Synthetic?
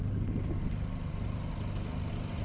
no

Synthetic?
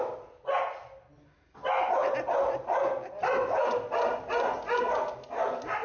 no